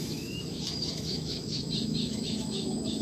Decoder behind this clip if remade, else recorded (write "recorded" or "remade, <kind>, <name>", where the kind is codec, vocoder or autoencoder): remade, autoencoder, DAC-VAE